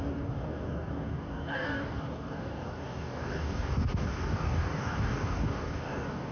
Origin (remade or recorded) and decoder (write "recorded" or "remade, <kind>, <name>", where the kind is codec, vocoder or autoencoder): remade, codec, DAC